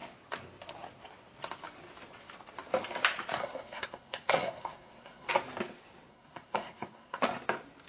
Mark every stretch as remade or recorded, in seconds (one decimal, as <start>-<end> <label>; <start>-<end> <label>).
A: 0.0-3.4 recorded; 3.4-5.3 remade; 5.3-6.1 recorded; 6.1-7.2 remade; 7.2-7.9 recorded